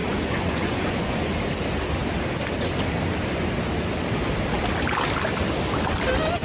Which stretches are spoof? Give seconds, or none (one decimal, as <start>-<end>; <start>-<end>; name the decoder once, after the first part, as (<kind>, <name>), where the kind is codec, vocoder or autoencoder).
0.0-1.3 (vocoder, Vocos)